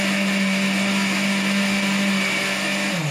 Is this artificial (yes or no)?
no